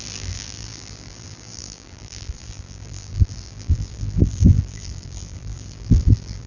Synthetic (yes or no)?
yes